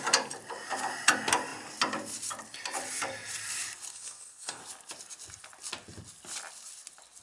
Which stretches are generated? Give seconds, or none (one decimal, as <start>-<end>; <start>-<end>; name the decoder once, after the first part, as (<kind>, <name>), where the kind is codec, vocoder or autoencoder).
3.9-4.6 (codec, SNAC)